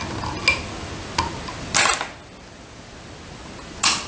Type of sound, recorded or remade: recorded